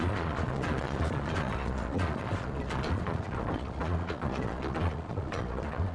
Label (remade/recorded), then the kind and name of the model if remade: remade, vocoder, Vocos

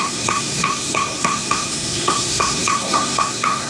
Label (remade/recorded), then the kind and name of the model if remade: remade, codec, SNAC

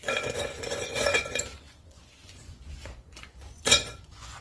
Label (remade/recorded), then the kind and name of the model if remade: remade, vocoder, Vocos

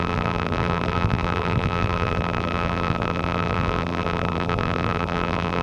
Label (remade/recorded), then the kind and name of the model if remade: remade, vocoder, BigVGAN v2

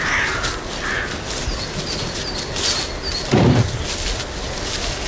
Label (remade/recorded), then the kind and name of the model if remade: recorded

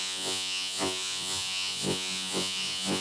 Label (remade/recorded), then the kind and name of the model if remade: remade, vocoder, Vocos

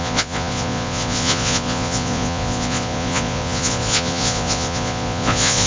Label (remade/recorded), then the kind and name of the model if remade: remade, vocoder, Vocos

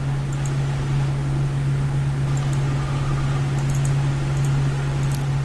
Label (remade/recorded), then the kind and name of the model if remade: recorded